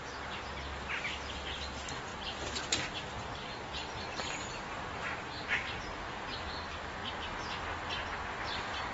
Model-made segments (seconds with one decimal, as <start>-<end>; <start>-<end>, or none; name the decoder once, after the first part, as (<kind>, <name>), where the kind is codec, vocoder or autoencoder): none

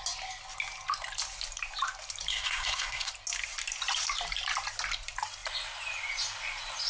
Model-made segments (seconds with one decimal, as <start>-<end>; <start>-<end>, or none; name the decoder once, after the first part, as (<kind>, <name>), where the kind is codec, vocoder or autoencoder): 2.3-3.1 (codec, SNAC)

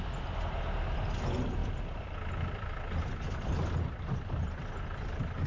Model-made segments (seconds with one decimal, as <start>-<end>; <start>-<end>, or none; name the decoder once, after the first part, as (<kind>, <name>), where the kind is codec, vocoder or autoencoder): none

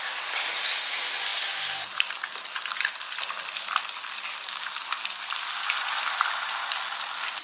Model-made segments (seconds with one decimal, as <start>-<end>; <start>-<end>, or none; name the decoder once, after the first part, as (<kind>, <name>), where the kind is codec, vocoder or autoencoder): none